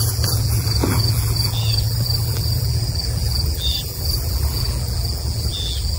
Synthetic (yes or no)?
yes